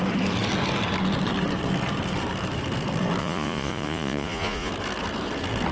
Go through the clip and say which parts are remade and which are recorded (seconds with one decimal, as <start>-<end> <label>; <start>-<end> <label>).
0.0-3.2 recorded; 3.2-4.7 remade; 4.7-5.7 recorded